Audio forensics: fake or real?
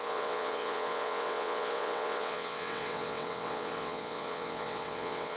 fake